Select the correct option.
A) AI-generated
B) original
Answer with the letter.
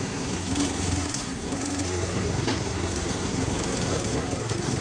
A